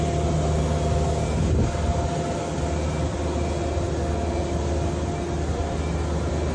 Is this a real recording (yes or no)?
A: yes